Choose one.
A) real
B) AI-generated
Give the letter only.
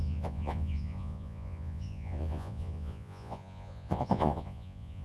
B